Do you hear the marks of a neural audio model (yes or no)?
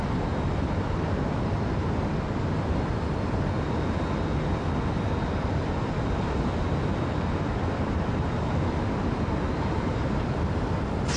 no